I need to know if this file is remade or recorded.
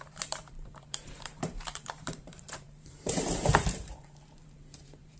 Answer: remade